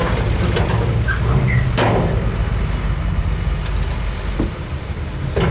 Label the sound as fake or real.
real